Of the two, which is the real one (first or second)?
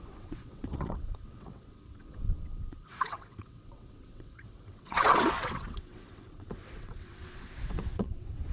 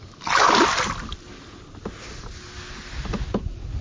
second